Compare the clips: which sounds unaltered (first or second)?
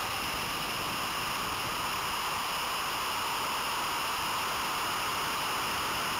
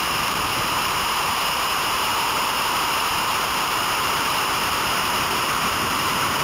first